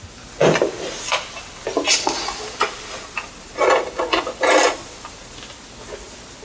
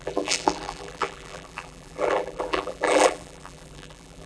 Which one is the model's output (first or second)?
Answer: second